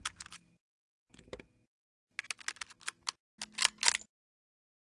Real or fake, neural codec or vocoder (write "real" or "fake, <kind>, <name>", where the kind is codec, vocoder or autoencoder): real